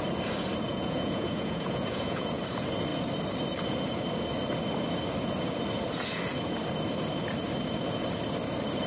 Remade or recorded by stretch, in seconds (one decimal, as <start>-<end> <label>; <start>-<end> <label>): 0.0-0.7 recorded; 0.7-2.4 remade; 2.4-8.9 recorded